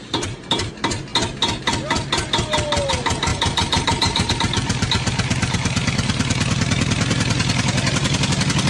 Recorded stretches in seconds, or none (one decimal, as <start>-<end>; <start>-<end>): 0.0-3.3; 4.3-8.7